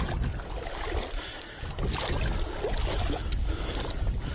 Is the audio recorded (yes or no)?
yes